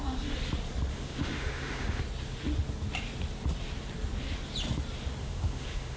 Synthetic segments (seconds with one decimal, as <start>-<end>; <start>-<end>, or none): 0.9-2.0; 5.2-6.0